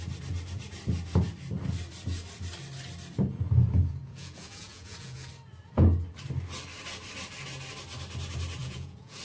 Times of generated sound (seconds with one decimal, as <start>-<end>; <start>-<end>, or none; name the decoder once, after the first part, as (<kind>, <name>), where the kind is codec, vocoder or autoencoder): 4.0-5.3 (vocoder, Vocos); 8.6-9.2